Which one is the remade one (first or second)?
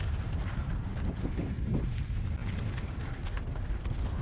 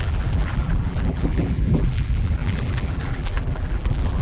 second